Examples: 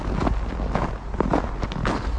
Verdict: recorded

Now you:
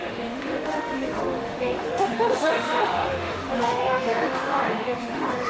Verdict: remade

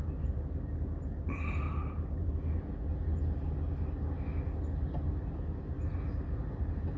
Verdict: recorded